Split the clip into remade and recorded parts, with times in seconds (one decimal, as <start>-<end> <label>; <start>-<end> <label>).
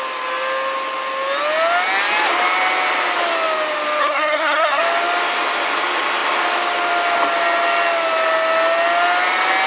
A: 0.0-4.0 recorded; 4.0-4.8 remade; 4.8-9.7 recorded